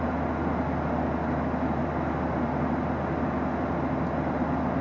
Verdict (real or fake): real